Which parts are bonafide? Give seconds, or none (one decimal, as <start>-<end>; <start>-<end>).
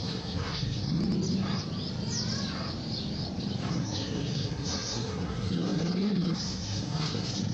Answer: 1.0-3.7